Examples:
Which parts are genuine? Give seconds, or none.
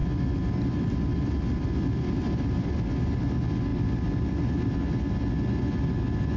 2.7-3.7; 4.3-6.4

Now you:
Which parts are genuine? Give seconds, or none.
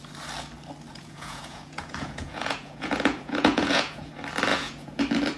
0.0-0.9; 4.1-4.5; 5.0-5.4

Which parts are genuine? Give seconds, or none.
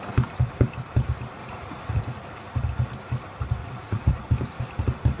0.0-1.4; 2.0-3.6; 4.2-5.2